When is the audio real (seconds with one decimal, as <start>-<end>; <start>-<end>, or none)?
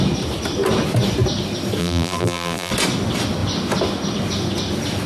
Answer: 0.0-1.8; 2.7-5.1